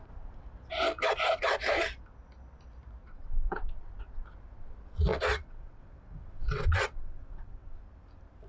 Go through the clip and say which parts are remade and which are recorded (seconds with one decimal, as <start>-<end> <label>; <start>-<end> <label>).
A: 0.0-3.0 recorded; 3.0-3.8 remade; 3.8-5.1 recorded; 5.1-7.8 remade; 7.8-8.5 recorded